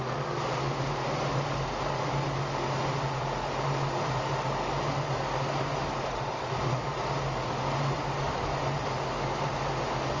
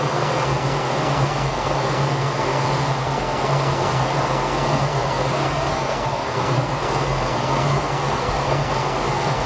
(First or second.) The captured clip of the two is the first